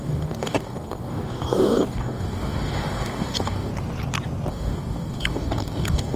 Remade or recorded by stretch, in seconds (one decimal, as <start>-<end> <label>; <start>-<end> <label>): 0.0-3.7 remade; 3.7-4.5 recorded; 4.5-6.2 remade